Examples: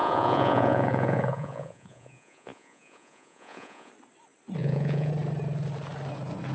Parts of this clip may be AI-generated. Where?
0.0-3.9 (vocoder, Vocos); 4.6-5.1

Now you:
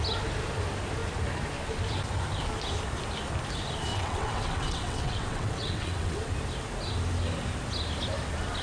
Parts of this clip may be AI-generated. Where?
3.9-6.2 (vocoder, WaveNeXt)

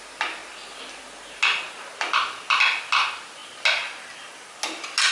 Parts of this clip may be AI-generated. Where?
none

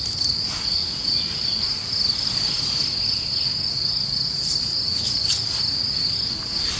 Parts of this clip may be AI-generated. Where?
4.7-5.3 (vocoder, Vocos)

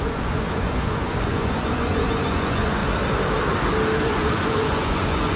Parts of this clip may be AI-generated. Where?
0.0-2.8 (vocoder, Vocos); 4.0-5.4

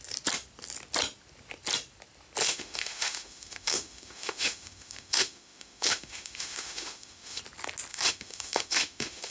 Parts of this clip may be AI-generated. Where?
2.4-7.4 (autoencoder, DAC-VAE); 7.9-9.3